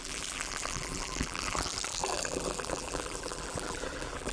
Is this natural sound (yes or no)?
no